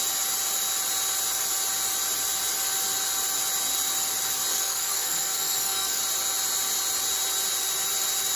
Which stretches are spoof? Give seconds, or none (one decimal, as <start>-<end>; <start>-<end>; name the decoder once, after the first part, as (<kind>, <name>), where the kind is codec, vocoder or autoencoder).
4.5-6.0 (codec, SNAC)